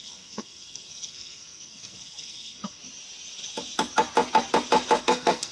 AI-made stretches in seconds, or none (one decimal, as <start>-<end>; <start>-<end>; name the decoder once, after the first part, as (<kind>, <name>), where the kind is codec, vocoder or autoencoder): 0.0-2.8 (codec, SNAC); 5.0-5.5